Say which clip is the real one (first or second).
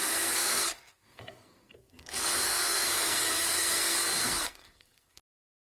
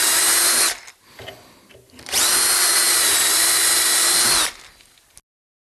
second